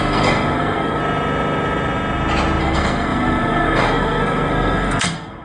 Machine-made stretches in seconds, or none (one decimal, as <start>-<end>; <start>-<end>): 0.0-1.0; 2.6-5.4